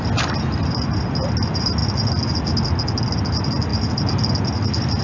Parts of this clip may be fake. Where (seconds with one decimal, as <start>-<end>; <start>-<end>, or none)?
none